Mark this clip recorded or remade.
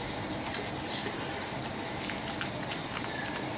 recorded